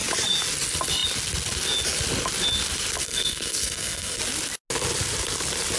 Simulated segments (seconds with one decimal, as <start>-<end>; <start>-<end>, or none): 3.0-4.2